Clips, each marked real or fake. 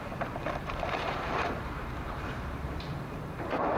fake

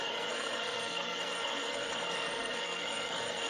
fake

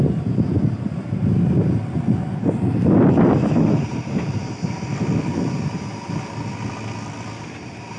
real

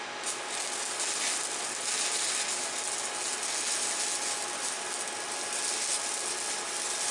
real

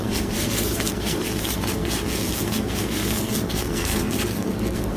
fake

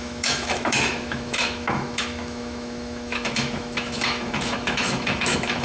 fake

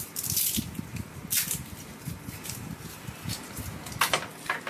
real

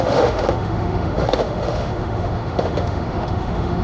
fake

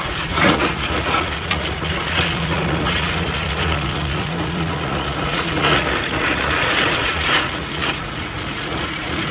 fake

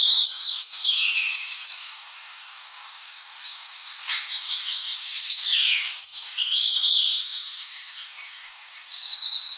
fake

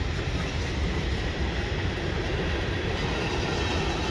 real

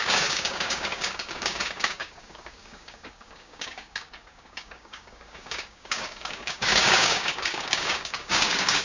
fake